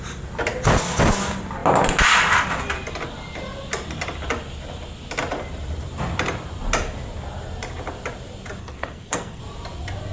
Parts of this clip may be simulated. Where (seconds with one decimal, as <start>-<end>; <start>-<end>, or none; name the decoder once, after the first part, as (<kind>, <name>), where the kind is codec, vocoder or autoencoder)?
8.6-9.4 (codec, SNAC)